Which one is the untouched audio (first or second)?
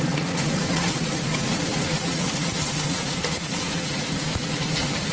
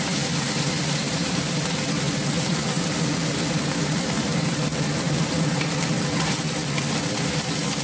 second